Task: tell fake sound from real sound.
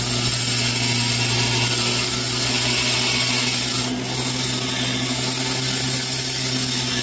real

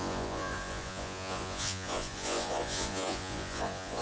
fake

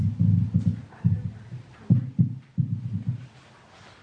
real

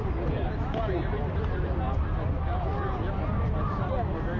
real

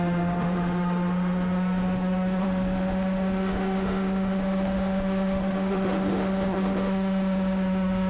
fake